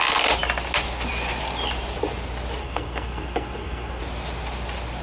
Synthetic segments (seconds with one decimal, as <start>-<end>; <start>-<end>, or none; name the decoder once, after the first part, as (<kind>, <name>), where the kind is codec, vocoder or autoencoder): 2.6-4.0 (codec, SNAC)